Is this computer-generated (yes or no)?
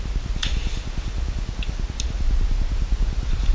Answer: no